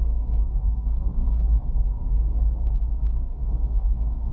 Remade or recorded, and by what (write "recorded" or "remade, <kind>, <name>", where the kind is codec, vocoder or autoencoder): remade, codec, SNAC